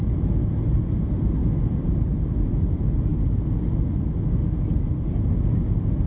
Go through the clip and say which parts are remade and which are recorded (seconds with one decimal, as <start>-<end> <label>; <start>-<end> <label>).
0.0-1.4 recorded; 1.4-2.3 remade; 2.3-6.1 recorded